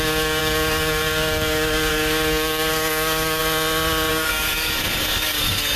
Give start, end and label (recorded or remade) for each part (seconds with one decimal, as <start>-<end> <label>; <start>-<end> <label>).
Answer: 0.0-3.4 remade; 3.4-4.1 recorded; 4.1-5.8 remade